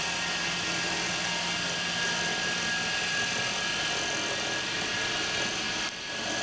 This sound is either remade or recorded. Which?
recorded